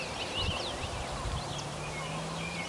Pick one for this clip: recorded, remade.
recorded